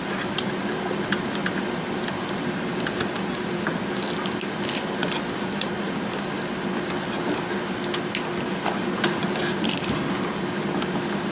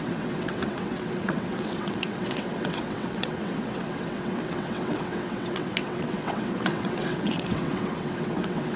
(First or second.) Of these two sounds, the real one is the first